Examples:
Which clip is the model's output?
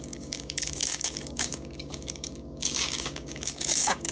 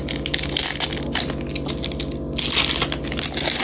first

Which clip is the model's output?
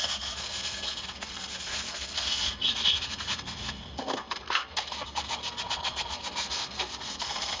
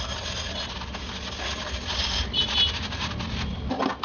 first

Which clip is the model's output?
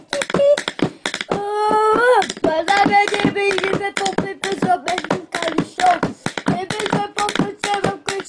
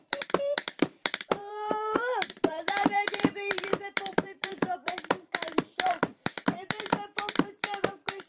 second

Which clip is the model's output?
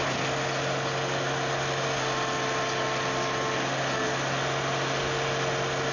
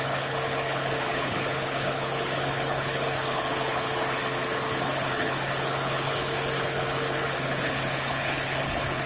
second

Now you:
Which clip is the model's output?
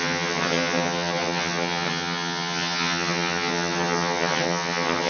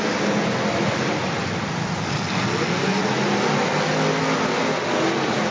first